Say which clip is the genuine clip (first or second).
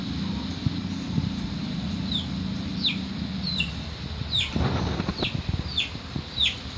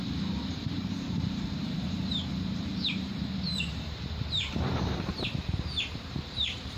first